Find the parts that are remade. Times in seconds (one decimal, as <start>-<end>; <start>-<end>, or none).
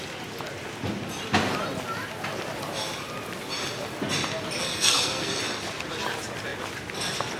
4.6-5.4